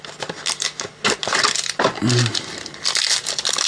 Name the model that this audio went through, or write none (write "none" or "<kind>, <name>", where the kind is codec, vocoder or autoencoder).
none